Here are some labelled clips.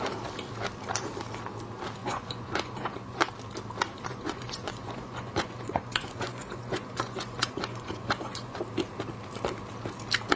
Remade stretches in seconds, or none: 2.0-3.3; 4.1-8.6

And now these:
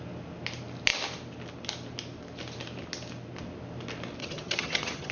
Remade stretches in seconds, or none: 4.2-5.1

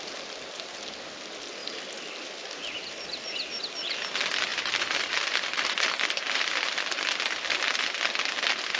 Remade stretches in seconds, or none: 1.6-3.6; 4.5-7.9